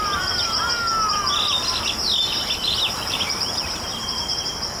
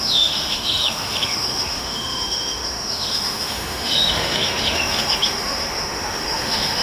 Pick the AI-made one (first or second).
second